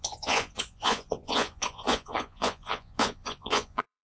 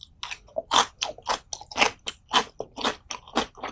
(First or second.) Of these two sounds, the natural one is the second